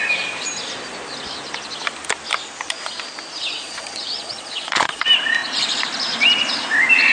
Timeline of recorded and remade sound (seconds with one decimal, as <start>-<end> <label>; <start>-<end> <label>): 0.0-3.4 recorded; 3.4-5.0 remade; 5.0-7.1 recorded